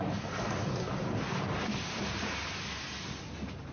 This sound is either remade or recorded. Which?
recorded